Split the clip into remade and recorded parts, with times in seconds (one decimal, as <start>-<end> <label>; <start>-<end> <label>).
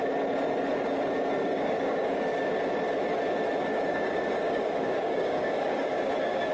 0.0-1.4 recorded; 1.4-2.5 remade; 2.5-3.7 recorded; 3.7-6.5 remade